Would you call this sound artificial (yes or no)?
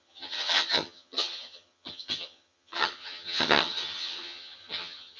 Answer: yes